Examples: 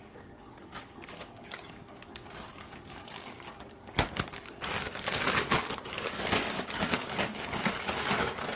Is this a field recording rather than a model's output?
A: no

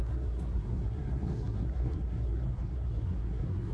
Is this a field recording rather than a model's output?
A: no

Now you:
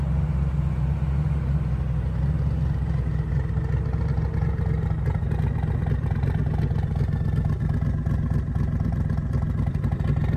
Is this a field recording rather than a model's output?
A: yes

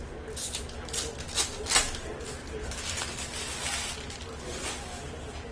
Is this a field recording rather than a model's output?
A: yes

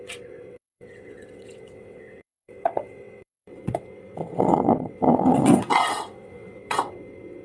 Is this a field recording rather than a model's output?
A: no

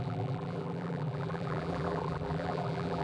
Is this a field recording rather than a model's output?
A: no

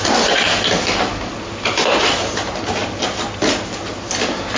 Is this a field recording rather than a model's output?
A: yes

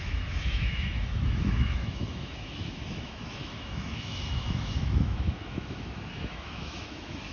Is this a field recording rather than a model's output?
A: no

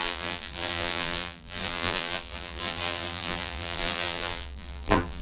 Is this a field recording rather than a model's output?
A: no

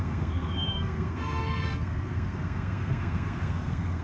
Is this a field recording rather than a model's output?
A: no